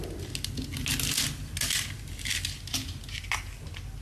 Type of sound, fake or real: real